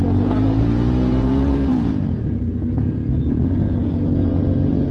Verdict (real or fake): fake